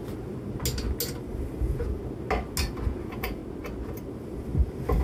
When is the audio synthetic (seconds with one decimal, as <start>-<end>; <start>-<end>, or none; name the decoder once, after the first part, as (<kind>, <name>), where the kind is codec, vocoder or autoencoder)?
1.6-2.0 (vocoder, Vocos); 3.0-3.4